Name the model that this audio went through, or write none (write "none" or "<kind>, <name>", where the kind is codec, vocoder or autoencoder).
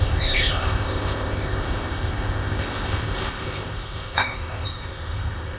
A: codec, ZipCodec